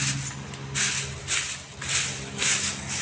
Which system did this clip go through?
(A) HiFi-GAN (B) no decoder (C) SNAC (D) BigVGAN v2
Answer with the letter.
B